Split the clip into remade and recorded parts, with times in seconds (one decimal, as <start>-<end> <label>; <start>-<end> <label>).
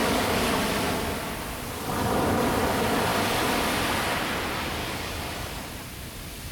0.0-0.5 remade; 0.5-4.8 recorded; 4.8-5.5 remade; 5.5-6.5 recorded